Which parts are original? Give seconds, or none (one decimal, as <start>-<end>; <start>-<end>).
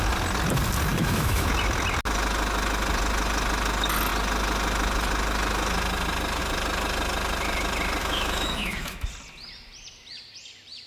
0.0-0.9; 1.5-8.0; 9.1-10.9